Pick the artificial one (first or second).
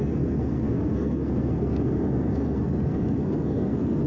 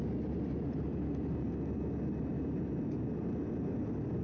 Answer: first